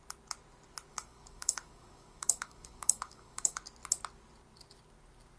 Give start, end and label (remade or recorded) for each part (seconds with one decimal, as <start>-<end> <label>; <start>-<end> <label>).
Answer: 0.0-0.9 recorded; 0.9-3.6 remade; 3.6-5.4 recorded